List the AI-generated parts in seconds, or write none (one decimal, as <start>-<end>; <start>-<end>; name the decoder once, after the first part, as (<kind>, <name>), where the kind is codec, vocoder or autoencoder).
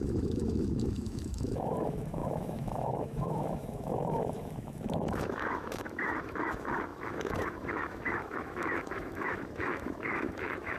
0.0-10.8 (autoencoder, DAC-VAE)